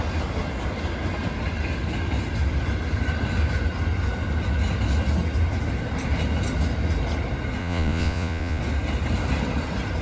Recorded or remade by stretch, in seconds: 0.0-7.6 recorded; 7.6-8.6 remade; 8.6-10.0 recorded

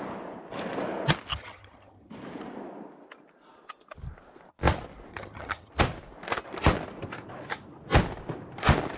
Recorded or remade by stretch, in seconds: 0.0-1.3 recorded; 1.3-2.1 remade; 2.1-5.1 recorded; 5.1-5.7 remade; 5.7-9.0 recorded